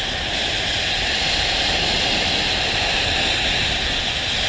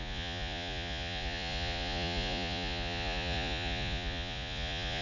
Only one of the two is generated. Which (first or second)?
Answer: second